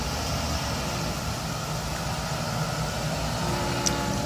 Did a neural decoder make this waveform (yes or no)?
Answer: no